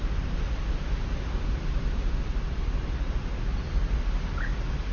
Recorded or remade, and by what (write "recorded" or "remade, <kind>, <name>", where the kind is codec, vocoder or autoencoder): recorded